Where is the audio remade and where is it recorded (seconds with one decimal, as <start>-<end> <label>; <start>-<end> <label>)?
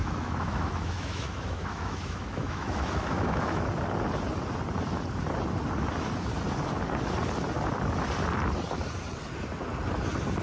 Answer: 0.0-3.6 remade; 3.6-10.4 recorded